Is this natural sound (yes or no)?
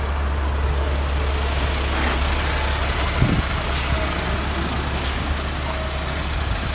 yes